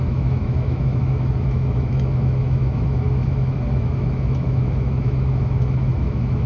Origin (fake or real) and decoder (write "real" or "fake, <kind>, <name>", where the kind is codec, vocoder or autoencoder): fake, autoencoder, DAC-VAE